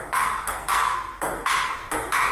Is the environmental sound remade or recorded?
remade